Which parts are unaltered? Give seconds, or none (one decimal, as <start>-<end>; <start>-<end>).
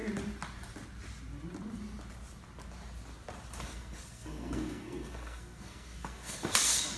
0.0-3.6